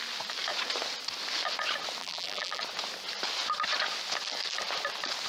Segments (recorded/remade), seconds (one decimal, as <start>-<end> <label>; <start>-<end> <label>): 0.0-2.0 recorded; 2.0-2.6 remade; 2.6-5.3 recorded